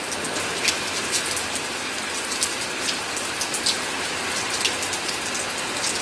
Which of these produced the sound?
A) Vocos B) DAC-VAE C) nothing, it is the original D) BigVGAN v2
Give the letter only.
C